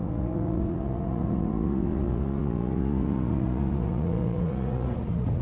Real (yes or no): no